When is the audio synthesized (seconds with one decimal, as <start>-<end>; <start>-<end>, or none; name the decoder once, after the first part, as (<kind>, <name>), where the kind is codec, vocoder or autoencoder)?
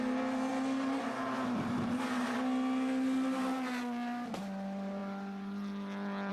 none